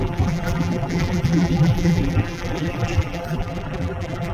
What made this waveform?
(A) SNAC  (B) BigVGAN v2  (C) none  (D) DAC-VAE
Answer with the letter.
B